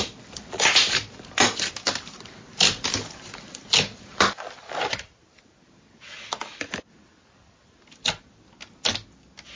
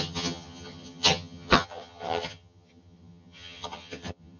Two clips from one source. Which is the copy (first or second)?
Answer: second